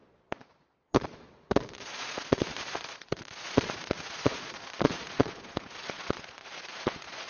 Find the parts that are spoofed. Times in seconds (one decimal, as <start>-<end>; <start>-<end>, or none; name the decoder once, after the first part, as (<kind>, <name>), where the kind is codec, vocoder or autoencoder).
0.0-7.3 (vocoder, Vocos)